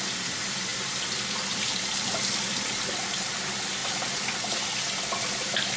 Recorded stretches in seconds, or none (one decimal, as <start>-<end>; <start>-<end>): 0.0-5.8

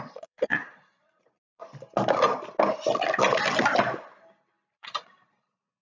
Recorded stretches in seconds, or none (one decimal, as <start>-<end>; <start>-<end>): 1.6-4.7

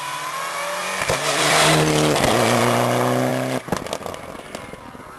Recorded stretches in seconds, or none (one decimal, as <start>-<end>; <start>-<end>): 0.0-0.8; 2.3-5.2

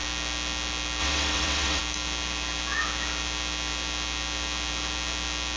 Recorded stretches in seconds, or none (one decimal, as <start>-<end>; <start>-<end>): 0.0-1.0; 1.8-5.6

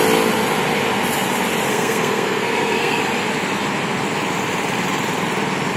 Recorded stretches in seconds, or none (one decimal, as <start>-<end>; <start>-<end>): 0.0-1.7; 3.0-5.8